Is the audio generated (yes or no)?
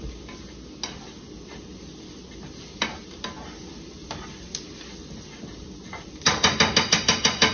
no